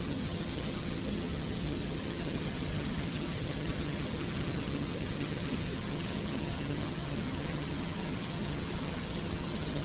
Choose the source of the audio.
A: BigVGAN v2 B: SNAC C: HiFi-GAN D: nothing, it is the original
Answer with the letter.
C